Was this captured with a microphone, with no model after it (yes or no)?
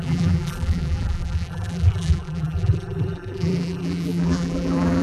no